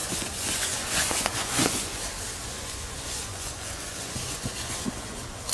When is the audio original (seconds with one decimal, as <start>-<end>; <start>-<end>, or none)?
2.0-2.4